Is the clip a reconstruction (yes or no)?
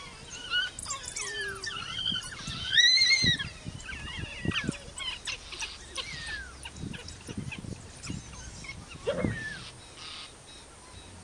no